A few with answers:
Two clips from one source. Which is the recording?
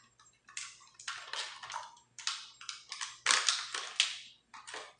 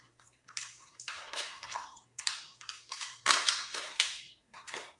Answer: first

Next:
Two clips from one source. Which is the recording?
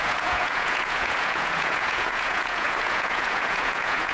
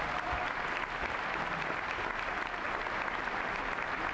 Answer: second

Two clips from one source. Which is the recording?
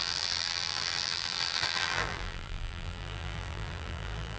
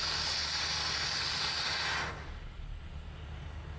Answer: second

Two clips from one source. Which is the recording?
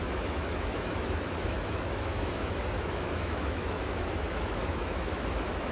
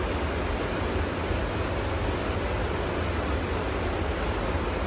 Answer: second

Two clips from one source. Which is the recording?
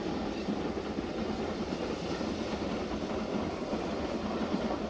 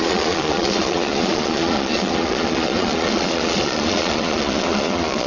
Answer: first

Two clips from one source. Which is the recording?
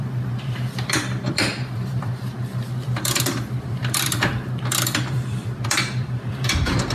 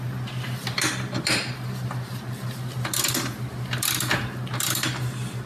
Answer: second